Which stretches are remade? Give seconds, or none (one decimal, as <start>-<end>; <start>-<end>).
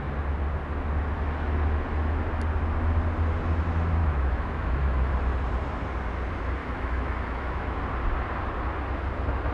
4.0-5.1; 6.6-7.8